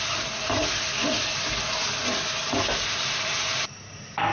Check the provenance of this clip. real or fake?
real